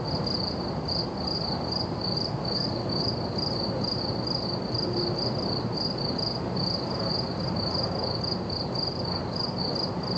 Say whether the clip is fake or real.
real